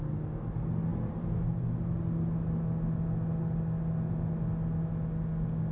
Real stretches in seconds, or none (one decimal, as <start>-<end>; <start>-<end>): 0.0-5.7